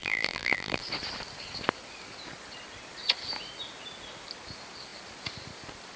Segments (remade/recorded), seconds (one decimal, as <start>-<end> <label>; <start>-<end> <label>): 0.0-0.8 remade; 0.8-6.0 recorded